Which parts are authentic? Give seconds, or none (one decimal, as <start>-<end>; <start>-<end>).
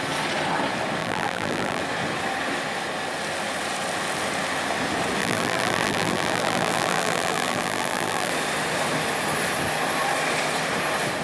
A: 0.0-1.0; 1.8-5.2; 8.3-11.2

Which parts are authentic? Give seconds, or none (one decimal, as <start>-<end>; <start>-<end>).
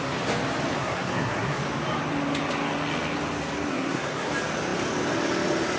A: 0.0-0.8; 1.6-3.7; 4.3-5.8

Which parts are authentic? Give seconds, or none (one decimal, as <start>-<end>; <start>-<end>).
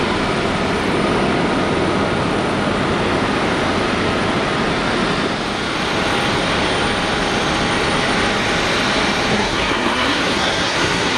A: 0.0-9.3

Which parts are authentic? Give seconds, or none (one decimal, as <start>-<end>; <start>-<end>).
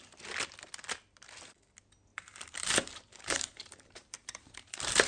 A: 0.0-2.1